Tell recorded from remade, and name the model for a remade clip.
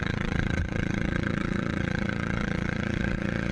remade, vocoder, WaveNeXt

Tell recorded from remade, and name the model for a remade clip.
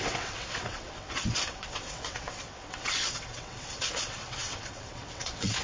remade, vocoder, WaveNeXt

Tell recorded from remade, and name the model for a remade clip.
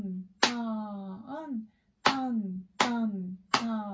recorded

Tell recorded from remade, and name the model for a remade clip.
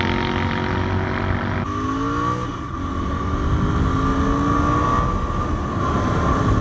recorded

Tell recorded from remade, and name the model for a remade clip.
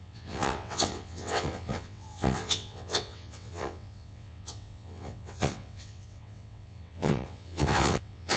remade, vocoder, WaveNeXt